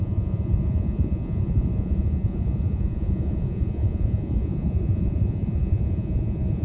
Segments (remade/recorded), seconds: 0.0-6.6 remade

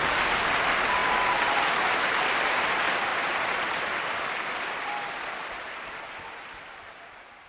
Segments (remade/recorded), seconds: 0.0-1.0 recorded; 1.0-2.6 remade; 2.6-3.1 recorded; 3.1-6.6 remade; 6.6-7.5 recorded

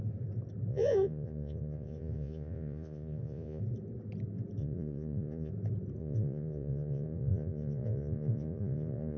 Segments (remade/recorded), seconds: 0.0-0.7 recorded; 0.7-3.6 remade; 3.6-4.6 recorded; 4.6-5.5 remade; 5.5-6.0 recorded; 6.0-9.2 remade

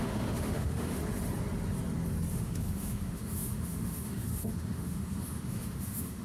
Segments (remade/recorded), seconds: 0.0-1.0 remade; 1.0-2.3 recorded; 2.3-6.2 remade

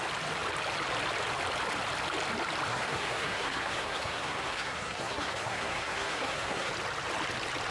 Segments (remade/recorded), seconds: 0.0-2.7 recorded; 2.7-6.7 remade; 6.7-7.7 recorded

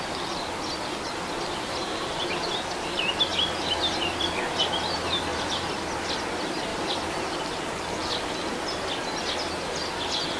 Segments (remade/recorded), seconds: 0.0-5.3 recorded; 5.3-5.9 remade; 5.9-6.7 recorded; 6.7-7.6 remade; 7.6-10.4 recorded

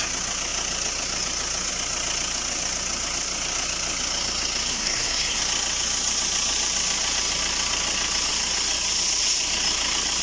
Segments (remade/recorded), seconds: 0.0-4.7 recorded; 4.7-5.4 remade; 5.4-10.2 recorded

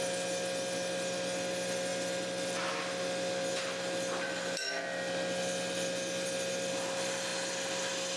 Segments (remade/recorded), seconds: 0.0-8.2 recorded